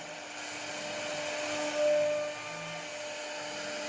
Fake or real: real